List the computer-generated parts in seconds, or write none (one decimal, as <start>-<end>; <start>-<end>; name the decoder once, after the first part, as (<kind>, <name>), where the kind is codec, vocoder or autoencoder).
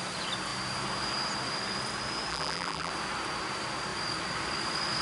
2.3-2.9 (vocoder, BigVGAN v2)